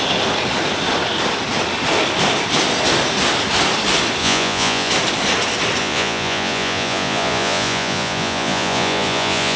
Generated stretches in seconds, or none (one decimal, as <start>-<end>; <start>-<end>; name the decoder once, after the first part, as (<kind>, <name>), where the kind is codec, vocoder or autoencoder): 4.2-4.9 (vocoder, Vocos); 5.8-9.6